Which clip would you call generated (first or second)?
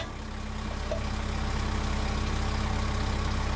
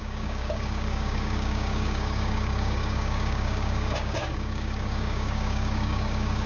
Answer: second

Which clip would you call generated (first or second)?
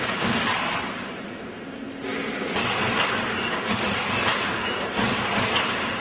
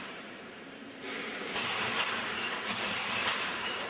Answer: second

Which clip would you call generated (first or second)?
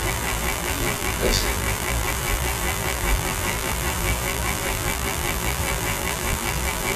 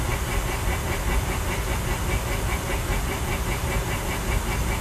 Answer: first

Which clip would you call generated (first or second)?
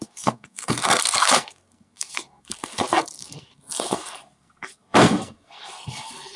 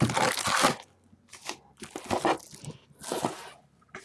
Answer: first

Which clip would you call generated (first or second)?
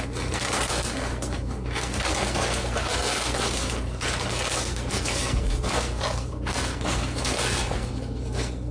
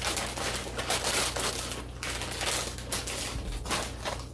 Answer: first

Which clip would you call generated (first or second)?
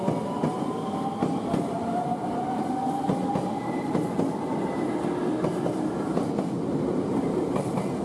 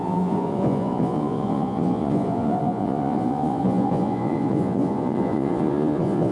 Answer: second